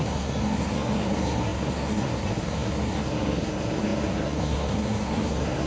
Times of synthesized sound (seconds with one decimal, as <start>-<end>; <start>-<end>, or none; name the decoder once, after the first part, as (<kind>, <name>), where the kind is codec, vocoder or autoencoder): 0.0-5.7 (codec, SNAC)